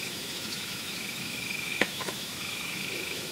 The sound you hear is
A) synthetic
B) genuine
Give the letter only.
A